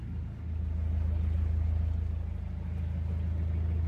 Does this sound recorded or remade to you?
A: recorded